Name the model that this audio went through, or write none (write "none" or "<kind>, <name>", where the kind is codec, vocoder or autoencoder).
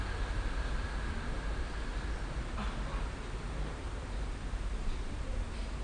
none